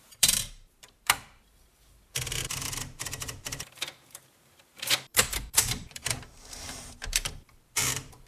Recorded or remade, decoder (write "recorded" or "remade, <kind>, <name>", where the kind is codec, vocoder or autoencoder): remade, vocoder, BigVGAN v2